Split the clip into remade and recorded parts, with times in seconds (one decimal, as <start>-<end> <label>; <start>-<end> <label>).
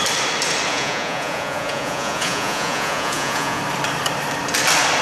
0.0-0.7 recorded; 0.7-3.6 remade; 3.6-5.0 recorded